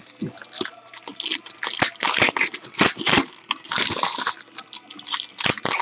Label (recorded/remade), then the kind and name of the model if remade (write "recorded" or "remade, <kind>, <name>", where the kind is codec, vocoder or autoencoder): recorded